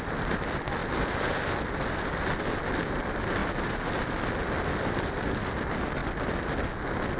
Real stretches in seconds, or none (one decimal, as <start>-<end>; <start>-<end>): 0.0-7.2